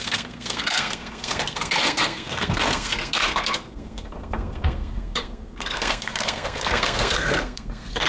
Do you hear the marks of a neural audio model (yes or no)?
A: yes